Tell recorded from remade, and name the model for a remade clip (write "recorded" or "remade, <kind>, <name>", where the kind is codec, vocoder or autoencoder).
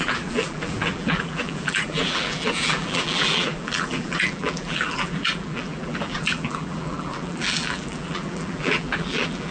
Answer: remade, vocoder, BigVGAN v2